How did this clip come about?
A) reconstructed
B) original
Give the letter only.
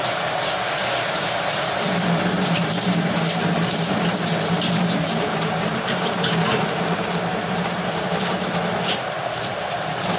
A